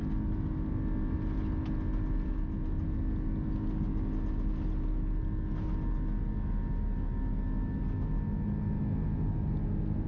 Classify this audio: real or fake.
real